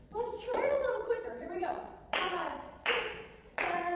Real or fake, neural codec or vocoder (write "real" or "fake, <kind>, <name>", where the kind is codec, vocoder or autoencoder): fake, vocoder, Vocos